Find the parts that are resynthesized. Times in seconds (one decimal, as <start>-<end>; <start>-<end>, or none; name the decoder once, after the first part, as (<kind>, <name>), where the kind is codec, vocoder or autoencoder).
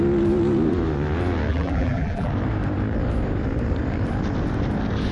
1.5-2.3 (vocoder, BigVGAN v2)